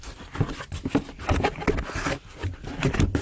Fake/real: real